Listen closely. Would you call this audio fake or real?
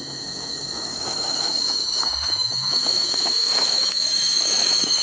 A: fake